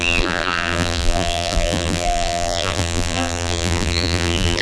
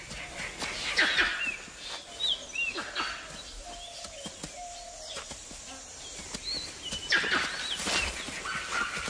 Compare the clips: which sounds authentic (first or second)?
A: second